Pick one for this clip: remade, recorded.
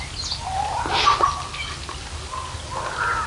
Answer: recorded